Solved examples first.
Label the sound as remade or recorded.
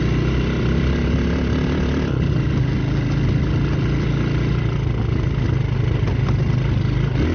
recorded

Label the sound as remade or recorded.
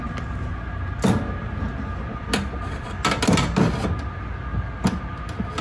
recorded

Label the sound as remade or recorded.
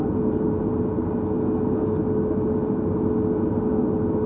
recorded